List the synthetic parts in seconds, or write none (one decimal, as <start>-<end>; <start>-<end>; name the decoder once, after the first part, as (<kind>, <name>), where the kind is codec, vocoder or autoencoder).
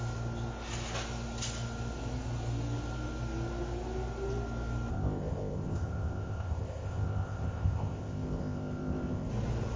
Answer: 4.9-9.3 (codec, ZipCodec)